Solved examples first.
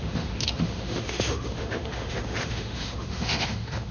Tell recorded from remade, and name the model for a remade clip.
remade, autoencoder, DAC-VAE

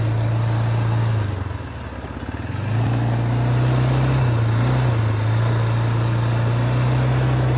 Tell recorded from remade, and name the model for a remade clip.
recorded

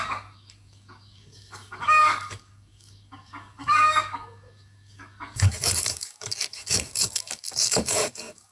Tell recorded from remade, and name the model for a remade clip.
remade, codec, DAC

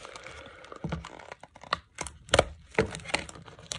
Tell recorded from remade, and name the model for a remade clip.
recorded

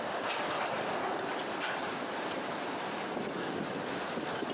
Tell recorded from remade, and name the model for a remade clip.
recorded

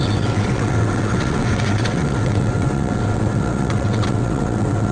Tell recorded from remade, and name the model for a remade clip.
remade, vocoder, WaveNeXt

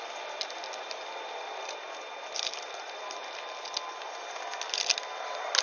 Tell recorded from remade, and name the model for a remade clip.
recorded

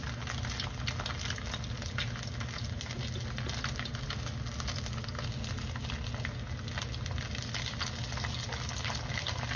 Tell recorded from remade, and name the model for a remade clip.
recorded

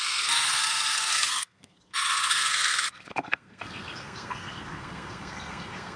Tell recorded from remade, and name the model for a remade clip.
remade, codec, SNAC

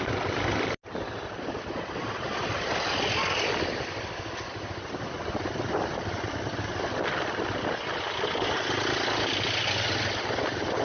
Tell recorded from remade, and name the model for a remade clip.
recorded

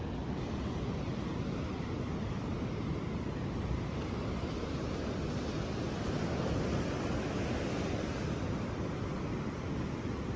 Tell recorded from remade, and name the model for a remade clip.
recorded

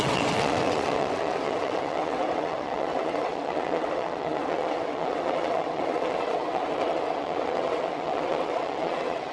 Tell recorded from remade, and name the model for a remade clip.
remade, vocoder, WaveNeXt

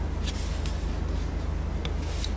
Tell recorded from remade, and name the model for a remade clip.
recorded